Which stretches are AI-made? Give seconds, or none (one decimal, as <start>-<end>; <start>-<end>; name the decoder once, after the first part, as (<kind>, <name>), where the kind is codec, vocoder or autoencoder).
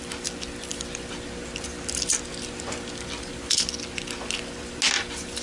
none